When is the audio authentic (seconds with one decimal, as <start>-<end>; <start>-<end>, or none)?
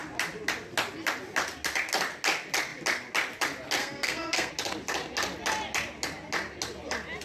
0.0-3.8; 4.5-7.2